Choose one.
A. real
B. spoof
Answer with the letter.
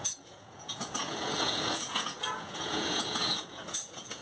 B